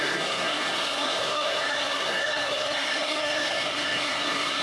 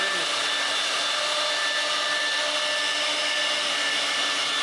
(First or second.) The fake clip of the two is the first